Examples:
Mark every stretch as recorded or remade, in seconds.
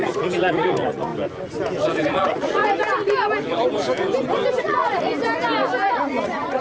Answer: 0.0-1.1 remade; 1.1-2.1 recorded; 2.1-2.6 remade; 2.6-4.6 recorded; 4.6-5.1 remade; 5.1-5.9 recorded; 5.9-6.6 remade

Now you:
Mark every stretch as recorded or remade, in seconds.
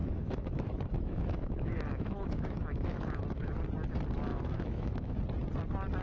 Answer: 0.0-3.6 remade; 3.6-4.3 recorded; 4.3-5.2 remade; 5.2-6.0 recorded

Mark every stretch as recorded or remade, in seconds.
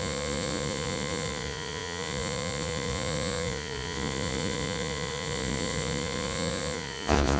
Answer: 0.0-7.4 remade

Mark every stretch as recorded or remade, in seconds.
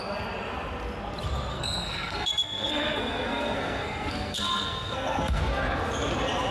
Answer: 0.0-1.5 recorded; 1.5-5.4 remade; 5.4-6.5 recorded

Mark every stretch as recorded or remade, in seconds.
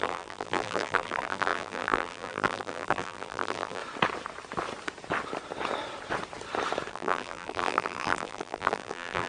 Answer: 0.0-3.8 remade; 3.8-6.9 recorded; 6.9-9.3 remade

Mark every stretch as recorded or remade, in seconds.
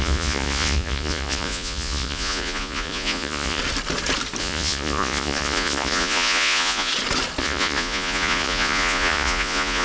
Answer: 0.0-3.6 remade; 3.6-4.4 recorded; 4.4-6.9 remade; 6.9-7.4 recorded; 7.4-9.8 remade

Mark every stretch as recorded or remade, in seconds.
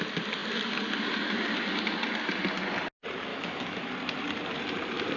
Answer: 0.0-3.3 recorded; 3.3-3.9 remade; 3.9-5.2 recorded